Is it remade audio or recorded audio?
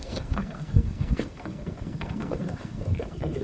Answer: remade